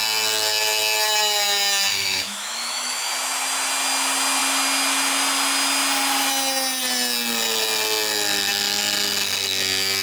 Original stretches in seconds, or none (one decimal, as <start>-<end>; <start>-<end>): 0.0-1.9; 3.1-10.0